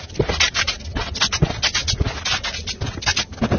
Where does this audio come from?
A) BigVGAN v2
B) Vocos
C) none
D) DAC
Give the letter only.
C